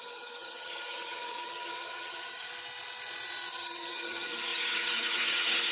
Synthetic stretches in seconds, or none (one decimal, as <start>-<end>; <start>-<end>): 0.0-2.5; 3.5-5.7